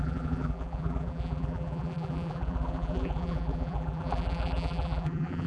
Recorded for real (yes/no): no